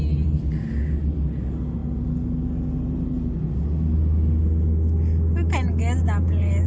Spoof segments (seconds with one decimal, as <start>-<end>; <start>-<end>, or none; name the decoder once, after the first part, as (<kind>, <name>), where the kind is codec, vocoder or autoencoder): none